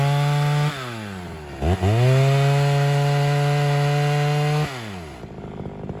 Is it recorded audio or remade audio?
recorded